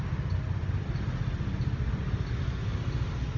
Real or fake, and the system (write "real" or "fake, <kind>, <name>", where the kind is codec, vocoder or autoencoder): real